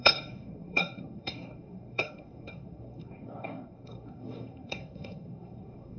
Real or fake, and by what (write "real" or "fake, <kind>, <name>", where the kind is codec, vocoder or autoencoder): fake, codec, SNAC